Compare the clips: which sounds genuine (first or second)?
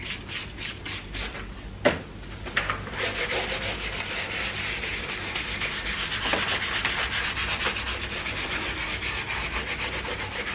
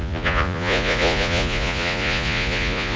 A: first